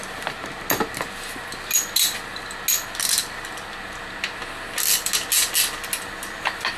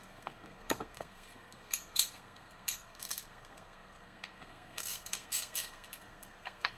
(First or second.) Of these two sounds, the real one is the first